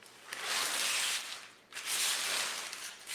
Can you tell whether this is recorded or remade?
recorded